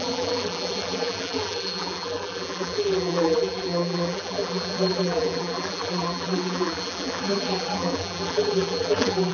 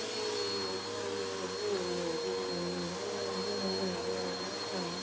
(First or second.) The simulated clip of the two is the first